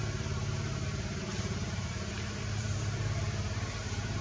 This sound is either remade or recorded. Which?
remade